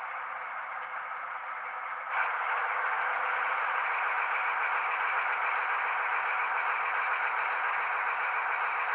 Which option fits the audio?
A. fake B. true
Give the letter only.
B